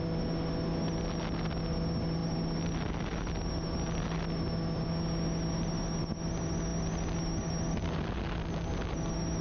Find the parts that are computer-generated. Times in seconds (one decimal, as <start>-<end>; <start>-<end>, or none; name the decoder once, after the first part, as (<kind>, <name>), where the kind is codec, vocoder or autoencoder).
none